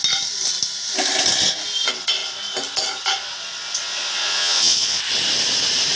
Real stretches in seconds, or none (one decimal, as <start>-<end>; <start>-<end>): 0.0-4.2; 5.0-6.0